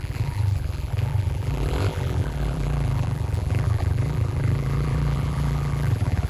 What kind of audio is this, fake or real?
fake